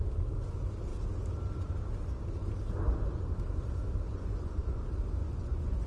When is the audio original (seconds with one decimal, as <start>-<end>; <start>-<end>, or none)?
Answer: 0.0-4.1; 4.8-5.2